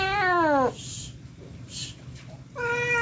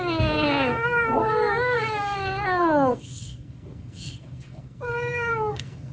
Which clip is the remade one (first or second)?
second